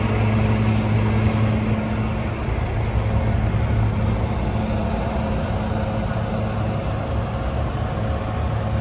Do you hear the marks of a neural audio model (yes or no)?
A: no